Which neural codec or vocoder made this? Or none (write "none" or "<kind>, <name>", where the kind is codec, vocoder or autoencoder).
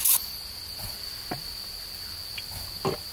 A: none